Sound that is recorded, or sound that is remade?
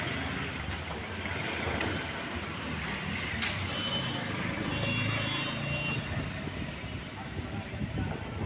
recorded